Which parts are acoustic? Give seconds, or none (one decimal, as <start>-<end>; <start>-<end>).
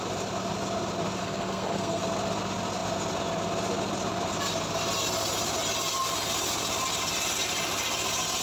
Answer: 0.0-1.2; 2.0-8.4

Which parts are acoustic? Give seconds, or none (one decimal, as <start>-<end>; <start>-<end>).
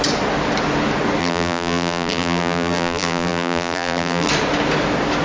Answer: 0.0-1.2; 4.3-5.2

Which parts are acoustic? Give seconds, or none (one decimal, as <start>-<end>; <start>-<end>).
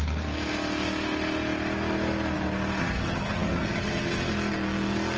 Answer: 0.0-2.8; 4.3-5.2